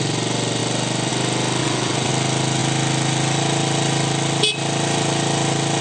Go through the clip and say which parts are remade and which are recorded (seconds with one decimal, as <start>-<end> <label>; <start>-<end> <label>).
0.0-1.6 recorded; 1.6-2.1 remade; 2.1-5.8 recorded

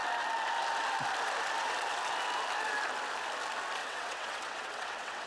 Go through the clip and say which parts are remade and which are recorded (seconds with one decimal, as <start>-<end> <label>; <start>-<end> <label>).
0.0-3.8 recorded; 3.8-5.3 remade

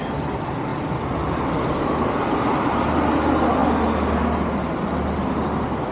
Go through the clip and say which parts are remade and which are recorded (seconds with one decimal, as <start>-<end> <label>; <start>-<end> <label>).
0.0-5.9 recorded

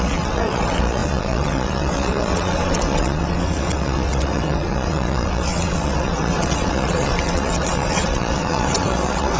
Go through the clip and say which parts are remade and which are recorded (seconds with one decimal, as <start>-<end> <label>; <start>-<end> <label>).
0.0-9.4 remade

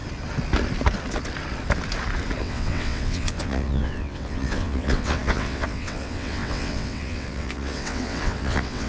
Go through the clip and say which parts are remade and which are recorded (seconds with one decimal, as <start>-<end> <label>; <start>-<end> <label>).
0.0-2.4 recorded; 2.4-8.9 remade

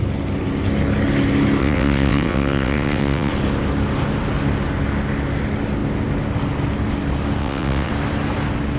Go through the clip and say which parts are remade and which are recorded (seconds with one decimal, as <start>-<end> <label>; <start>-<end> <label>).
0.0-1.6 recorded; 1.6-3.3 remade; 3.3-7.4 recorded; 7.4-7.9 remade; 7.9-8.8 recorded

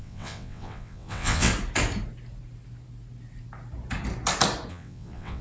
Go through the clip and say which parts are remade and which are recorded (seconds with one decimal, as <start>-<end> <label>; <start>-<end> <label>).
0.0-1.5 remade; 1.5-4.7 recorded; 4.7-5.4 remade